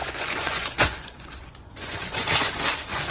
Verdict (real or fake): fake